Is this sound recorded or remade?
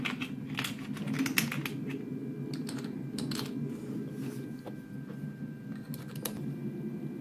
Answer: recorded